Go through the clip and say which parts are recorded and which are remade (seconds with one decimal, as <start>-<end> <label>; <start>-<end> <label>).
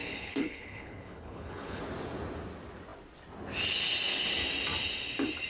0.0-1.8 remade; 1.8-5.5 recorded